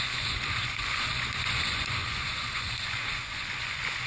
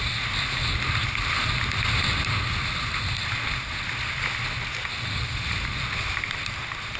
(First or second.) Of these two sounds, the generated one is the first